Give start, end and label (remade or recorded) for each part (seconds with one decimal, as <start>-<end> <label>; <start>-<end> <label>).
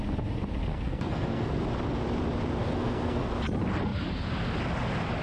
0.0-0.7 recorded; 0.7-1.6 remade; 1.6-2.6 recorded; 2.6-3.3 remade; 3.3-5.2 recorded